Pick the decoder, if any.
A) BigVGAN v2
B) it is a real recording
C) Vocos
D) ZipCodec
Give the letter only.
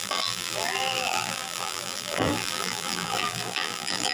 A